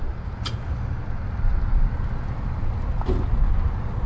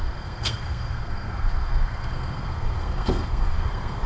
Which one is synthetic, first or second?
second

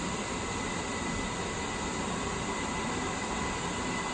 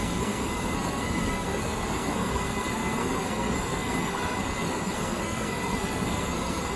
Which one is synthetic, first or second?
second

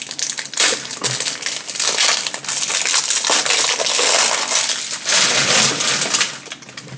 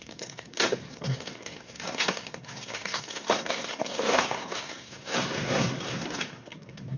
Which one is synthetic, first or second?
second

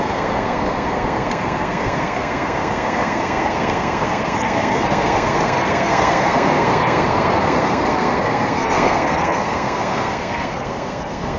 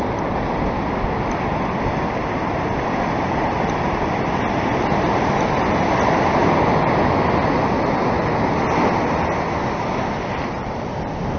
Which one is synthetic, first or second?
first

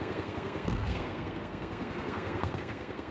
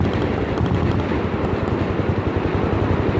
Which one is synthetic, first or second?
first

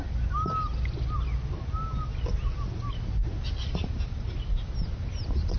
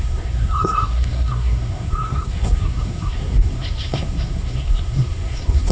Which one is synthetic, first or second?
second